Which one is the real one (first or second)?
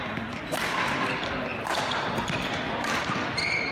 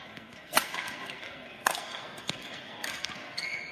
first